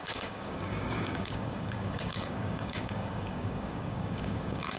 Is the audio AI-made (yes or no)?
yes